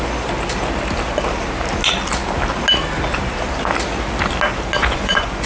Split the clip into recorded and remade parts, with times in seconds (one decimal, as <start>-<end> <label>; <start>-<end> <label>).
0.0-4.8 recorded; 4.8-5.5 remade